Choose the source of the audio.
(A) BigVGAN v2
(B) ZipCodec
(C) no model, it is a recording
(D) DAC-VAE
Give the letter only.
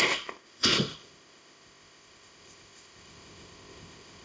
B